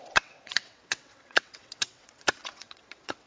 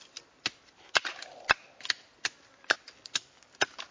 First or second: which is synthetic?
first